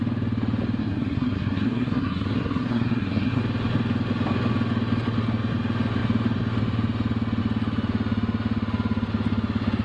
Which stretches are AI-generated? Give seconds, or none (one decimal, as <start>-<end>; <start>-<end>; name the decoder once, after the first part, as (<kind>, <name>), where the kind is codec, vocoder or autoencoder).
0.8-3.4 (codec, SNAC)